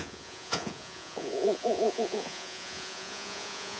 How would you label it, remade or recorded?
remade